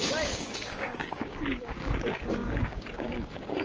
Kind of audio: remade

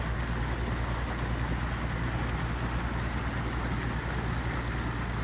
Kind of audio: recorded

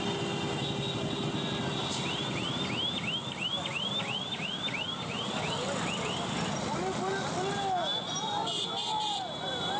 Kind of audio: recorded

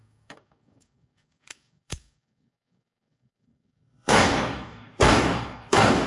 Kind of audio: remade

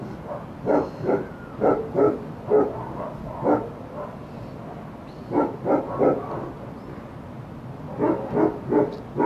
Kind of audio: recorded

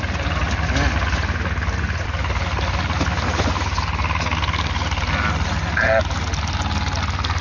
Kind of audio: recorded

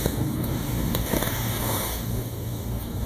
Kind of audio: remade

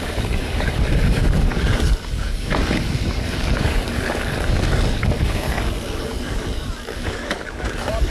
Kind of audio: remade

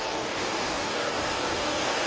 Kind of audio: remade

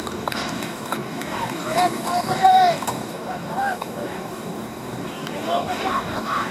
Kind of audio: remade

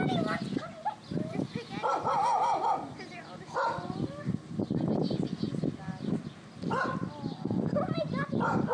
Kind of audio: recorded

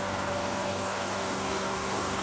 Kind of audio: remade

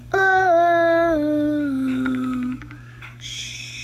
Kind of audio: remade